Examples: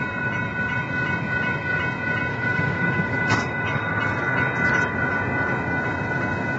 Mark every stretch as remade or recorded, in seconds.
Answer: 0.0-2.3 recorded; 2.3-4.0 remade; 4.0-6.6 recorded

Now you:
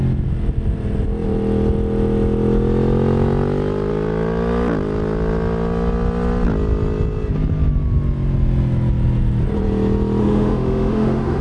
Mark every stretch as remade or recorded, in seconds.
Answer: 0.0-10.2 recorded; 10.2-11.4 remade

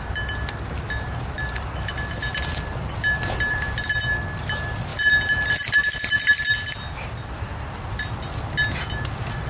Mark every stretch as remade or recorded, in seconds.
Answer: 0.0-9.5 recorded